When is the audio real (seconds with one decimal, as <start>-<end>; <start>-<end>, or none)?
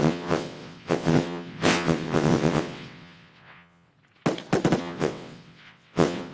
3.9-4.8